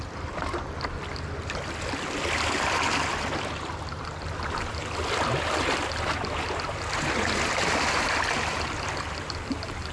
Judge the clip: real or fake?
real